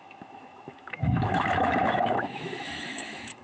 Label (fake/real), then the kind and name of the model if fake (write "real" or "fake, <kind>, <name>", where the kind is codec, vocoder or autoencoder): fake, autoencoder, DAC-VAE